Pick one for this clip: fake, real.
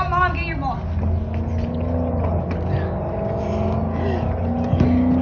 real